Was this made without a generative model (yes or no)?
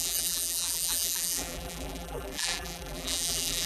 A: no